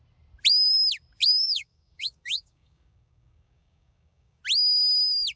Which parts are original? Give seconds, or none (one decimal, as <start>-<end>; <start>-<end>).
0.0-1.2; 4.4-5.4